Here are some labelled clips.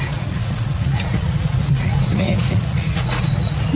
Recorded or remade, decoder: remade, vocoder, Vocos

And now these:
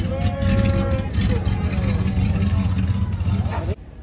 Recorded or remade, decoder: recorded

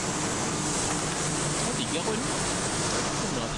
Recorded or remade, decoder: recorded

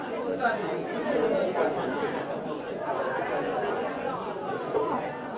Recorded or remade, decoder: remade, vocoder, Vocos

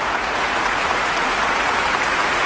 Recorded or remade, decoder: remade, vocoder, Vocos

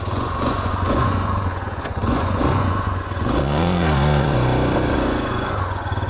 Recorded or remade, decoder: remade, vocoder, Vocos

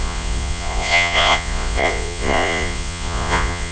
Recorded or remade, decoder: remade, vocoder, Vocos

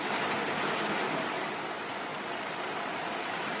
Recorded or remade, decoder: recorded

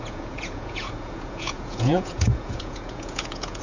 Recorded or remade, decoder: remade, vocoder, Vocos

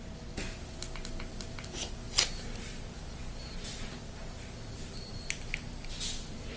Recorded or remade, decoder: recorded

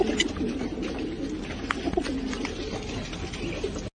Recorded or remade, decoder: recorded